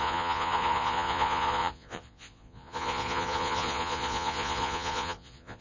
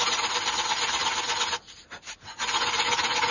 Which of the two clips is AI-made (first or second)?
first